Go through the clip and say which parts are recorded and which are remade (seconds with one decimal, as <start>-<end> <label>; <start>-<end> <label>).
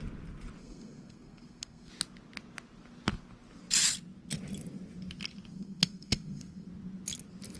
0.0-0.6 recorded; 0.6-1.9 remade; 1.9-5.5 recorded; 5.5-6.7 remade; 6.7-7.6 recorded